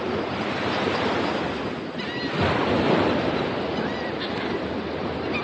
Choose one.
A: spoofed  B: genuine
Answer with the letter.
B